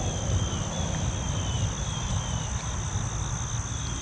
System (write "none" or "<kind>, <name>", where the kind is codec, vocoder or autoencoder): none